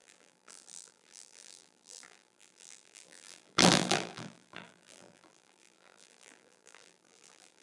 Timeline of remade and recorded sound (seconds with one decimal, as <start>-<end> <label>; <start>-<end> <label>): 0.0-7.6 remade